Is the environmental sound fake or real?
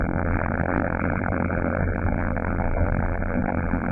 fake